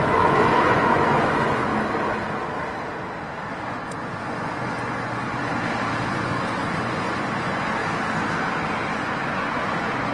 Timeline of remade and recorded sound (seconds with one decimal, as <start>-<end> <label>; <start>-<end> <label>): 0.0-1.7 remade; 1.7-3.7 recorded; 3.7-5.5 remade; 5.5-6.1 recorded; 6.1-7.8 remade; 7.8-8.9 recorded; 8.9-10.1 remade